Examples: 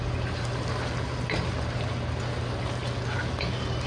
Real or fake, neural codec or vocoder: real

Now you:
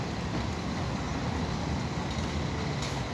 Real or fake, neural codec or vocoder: real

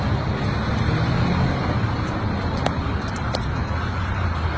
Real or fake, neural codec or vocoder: real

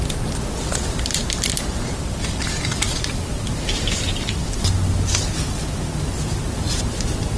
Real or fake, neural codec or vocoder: real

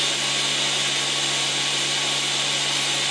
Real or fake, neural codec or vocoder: real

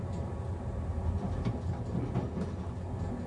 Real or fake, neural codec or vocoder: real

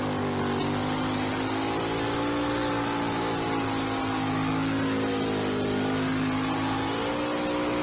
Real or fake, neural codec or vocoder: real